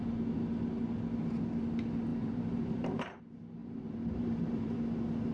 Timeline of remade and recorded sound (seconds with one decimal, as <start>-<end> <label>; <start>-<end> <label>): 0.0-2.1 recorded; 2.1-3.2 remade; 3.2-3.6 recorded; 3.6-4.8 remade; 4.8-5.3 recorded